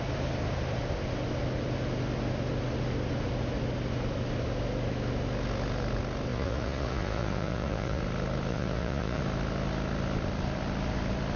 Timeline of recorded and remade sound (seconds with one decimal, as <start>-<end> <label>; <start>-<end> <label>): 0.0-6.3 recorded; 6.3-8.0 remade; 8.0-8.5 recorded; 8.5-9.2 remade; 9.2-11.4 recorded